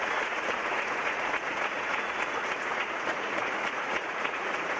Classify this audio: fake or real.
fake